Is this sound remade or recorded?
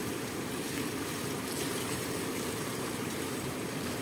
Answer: remade